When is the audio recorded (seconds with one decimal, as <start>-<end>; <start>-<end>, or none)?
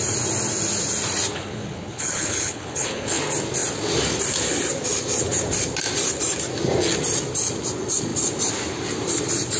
0.0-1.3; 3.2-9.6